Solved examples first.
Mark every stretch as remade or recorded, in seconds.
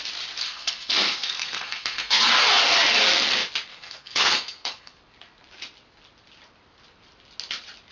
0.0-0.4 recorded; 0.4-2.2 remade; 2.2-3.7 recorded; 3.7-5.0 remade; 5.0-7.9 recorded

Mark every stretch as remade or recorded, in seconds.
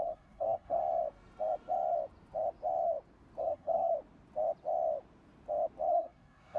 0.0-0.8 remade; 0.8-3.4 recorded; 3.4-3.9 remade; 3.9-5.9 recorded; 5.9-6.6 remade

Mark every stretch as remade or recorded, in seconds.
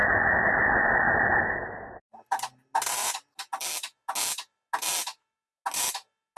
0.0-6.4 recorded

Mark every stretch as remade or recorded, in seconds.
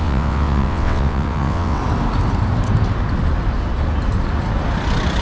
0.0-1.8 remade; 1.8-5.2 recorded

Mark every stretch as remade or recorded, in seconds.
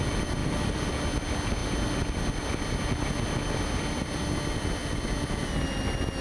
0.0-0.4 recorded; 0.4-0.9 remade; 0.9-6.2 recorded